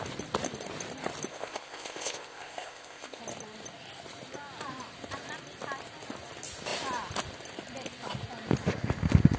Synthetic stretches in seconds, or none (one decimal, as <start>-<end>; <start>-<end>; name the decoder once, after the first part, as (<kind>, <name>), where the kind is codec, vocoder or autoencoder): 1.3-3.2 (codec, ZipCodec)